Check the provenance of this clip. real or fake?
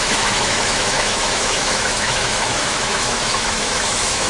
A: fake